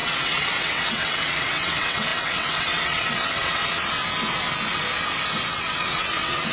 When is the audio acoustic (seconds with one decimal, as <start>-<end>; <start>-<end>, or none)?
3.6-5.5